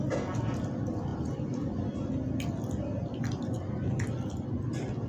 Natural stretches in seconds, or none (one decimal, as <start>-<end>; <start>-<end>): 0.0-5.1